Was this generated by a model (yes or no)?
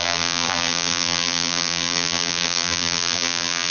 yes